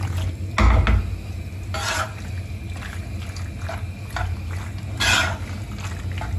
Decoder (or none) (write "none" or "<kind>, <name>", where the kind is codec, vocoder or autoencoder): none